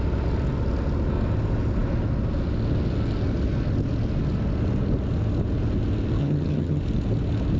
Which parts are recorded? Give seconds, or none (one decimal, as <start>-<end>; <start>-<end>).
0.0-6.2; 6.8-7.6